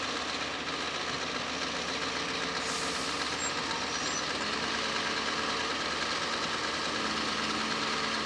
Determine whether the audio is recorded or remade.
recorded